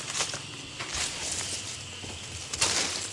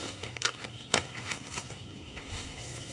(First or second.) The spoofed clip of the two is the second